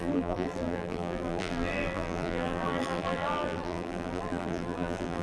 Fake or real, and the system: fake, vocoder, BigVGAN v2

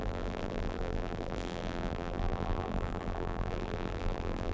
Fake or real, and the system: fake, vocoder, BigVGAN v2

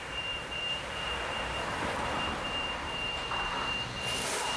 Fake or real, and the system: fake, vocoder, BigVGAN v2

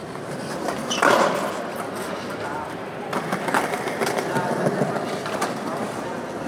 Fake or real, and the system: real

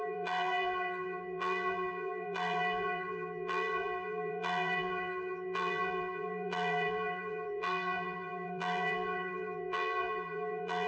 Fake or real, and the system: fake, vocoder, BigVGAN v2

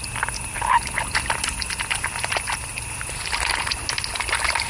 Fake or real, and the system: real